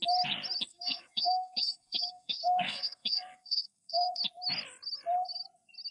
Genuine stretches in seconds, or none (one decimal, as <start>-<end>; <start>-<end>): 0.0-0.7; 4.2-5.9